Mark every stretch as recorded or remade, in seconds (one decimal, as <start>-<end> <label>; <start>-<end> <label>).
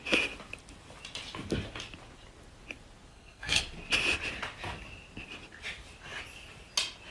0.0-3.1 recorded; 3.1-3.6 remade; 3.6-7.1 recorded